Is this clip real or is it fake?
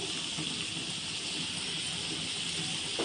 real